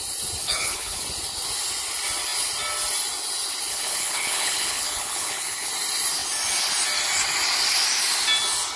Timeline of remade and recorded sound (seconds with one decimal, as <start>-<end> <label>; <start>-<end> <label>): 0.0-0.4 recorded; 0.4-1.0 remade; 1.0-3.7 recorded; 3.7-5.7 remade; 5.7-8.8 recorded